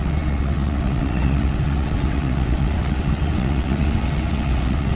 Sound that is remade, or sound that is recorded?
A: remade